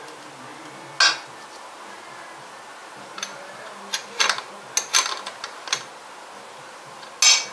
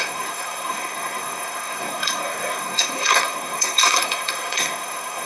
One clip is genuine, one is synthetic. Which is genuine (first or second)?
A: first